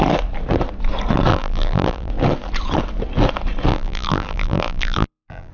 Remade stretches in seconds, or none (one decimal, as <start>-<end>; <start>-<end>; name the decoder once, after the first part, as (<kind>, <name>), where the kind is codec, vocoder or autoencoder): 1.3-2.1 (vocoder, BigVGAN v2); 3.7-5.5